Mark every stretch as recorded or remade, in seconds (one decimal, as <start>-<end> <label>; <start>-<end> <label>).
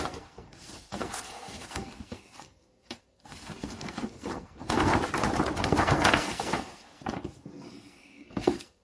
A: 0.0-4.9 remade; 4.9-5.6 recorded; 5.6-8.8 remade